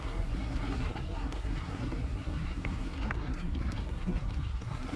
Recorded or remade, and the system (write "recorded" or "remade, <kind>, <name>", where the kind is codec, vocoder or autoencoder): remade, codec, SNAC